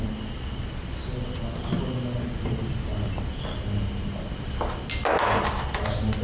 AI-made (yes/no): no